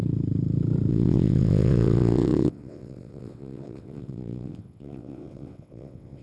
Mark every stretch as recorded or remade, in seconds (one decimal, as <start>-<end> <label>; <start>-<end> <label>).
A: 0.0-0.9 recorded; 0.9-6.2 remade